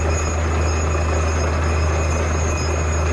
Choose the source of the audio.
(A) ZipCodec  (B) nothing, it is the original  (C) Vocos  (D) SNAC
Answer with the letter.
B